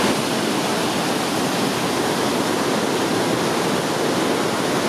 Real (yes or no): yes